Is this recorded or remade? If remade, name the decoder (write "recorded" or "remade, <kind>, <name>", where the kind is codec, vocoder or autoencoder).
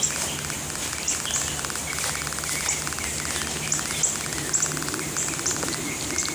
recorded